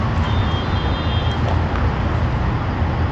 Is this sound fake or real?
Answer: real